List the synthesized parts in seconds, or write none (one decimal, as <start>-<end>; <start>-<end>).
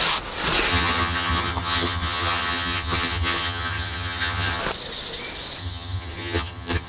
0.7-4.6; 5.6-6.9